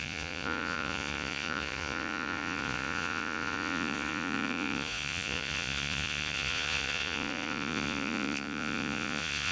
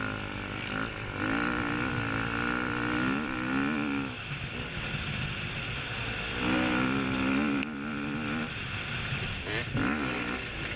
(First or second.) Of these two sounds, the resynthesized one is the first